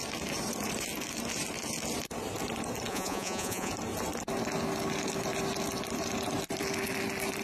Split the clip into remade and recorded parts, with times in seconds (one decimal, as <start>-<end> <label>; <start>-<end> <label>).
0.0-2.9 recorded; 2.9-3.7 remade; 3.7-7.4 recorded